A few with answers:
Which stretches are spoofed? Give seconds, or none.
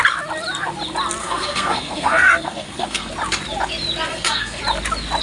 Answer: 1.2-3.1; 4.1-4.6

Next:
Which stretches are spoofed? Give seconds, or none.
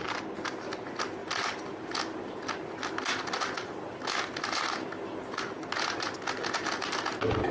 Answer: none